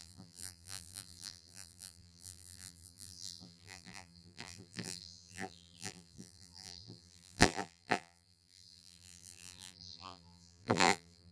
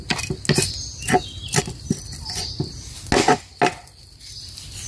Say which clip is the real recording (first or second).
second